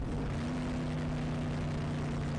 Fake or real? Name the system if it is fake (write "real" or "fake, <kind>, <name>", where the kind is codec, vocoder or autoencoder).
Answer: real